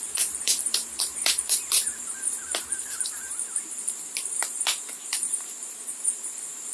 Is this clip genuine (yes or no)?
no